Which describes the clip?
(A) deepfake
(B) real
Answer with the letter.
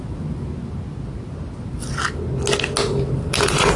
B